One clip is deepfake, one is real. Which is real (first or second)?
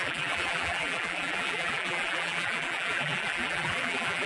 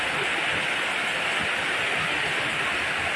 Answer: second